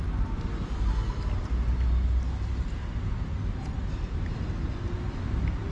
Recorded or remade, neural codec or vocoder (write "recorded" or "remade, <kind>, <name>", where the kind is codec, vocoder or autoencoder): recorded